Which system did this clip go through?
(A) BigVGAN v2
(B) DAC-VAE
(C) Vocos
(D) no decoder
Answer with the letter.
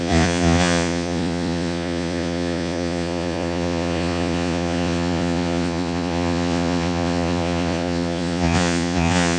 C